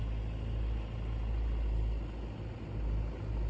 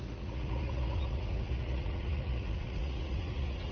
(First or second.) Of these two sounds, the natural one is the first